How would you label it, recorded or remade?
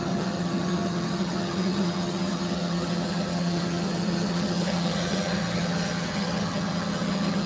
remade